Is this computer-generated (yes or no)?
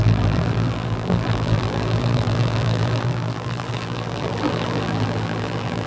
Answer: yes